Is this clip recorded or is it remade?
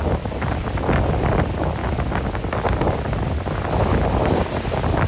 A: recorded